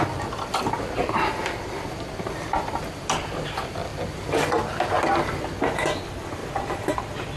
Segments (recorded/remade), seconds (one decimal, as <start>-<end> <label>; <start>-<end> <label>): 0.0-7.4 recorded